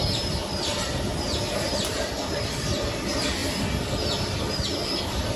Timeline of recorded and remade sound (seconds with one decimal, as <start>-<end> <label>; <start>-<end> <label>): 0.0-1.1 remade; 1.1-1.7 recorded; 1.7-3.4 remade; 3.4-4.4 recorded; 4.4-5.4 remade